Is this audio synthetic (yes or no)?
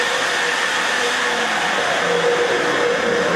no